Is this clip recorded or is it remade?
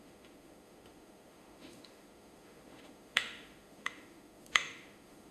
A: remade